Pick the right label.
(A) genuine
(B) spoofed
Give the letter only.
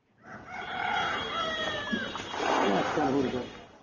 A